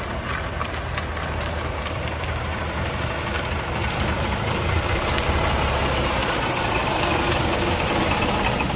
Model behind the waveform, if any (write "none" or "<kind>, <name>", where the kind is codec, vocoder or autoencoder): none